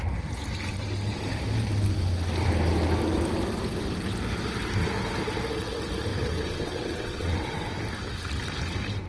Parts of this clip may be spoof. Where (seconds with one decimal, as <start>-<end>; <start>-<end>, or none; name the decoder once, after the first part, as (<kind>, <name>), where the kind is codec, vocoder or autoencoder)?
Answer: 6.1-7.7 (vocoder, WaveNeXt)